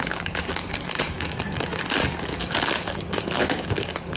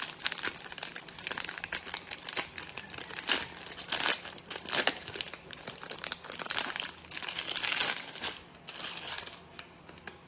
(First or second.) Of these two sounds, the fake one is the first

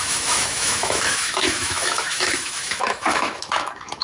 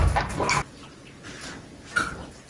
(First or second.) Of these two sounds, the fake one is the first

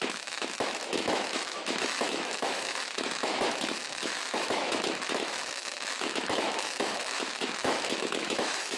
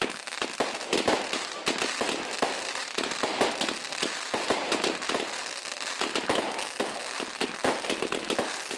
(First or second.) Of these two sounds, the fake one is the first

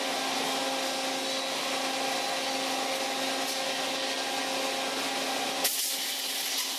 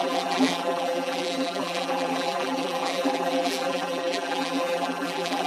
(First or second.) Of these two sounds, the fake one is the second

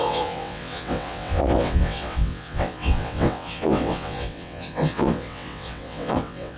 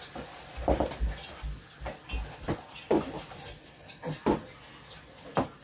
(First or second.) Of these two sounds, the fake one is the first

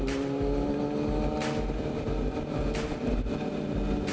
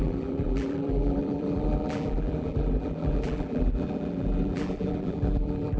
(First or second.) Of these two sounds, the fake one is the second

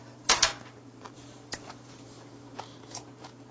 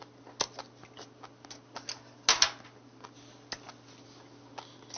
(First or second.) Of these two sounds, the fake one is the first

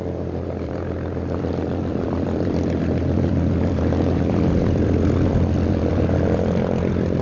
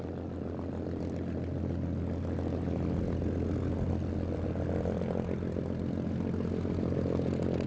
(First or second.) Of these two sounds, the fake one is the first